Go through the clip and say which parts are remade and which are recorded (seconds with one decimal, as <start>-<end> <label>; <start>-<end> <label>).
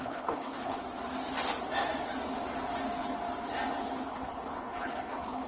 0.0-0.8 remade; 0.8-4.1 recorded; 4.1-5.5 remade